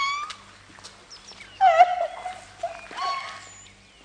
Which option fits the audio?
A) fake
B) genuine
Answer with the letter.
B